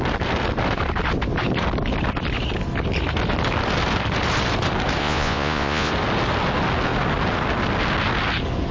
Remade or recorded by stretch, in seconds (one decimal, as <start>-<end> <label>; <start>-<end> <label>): 0.0-5.0 recorded; 5.0-5.9 remade; 5.9-8.7 recorded